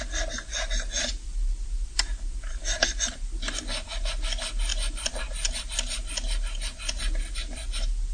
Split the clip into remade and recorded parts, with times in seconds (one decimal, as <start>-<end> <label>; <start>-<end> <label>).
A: 0.0-1.1 recorded; 1.1-2.5 remade; 2.5-8.1 recorded

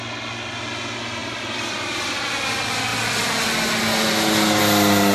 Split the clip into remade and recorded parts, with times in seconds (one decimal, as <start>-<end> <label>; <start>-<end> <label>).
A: 0.0-1.2 recorded; 1.2-2.2 remade; 2.2-5.1 recorded